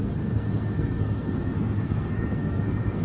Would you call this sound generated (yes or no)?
yes